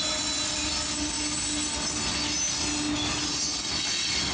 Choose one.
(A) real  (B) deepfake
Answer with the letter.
A